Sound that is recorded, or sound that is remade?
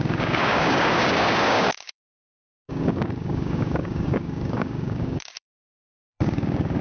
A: remade